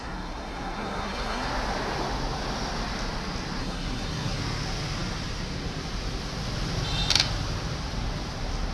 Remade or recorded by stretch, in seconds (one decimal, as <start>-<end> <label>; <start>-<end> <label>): 0.0-1.5 remade; 1.5-3.6 recorded; 3.6-4.4 remade; 4.4-8.7 recorded